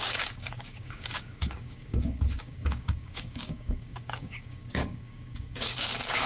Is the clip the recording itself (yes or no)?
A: no